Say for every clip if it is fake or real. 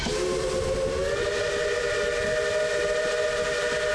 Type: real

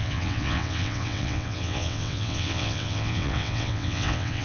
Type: fake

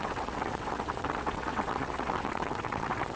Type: fake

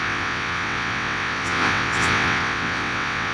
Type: fake